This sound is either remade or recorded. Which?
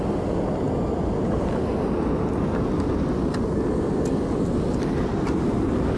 recorded